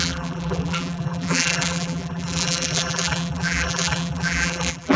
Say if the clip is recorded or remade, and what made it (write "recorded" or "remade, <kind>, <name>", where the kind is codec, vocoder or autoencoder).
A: remade, vocoder, BigVGAN v2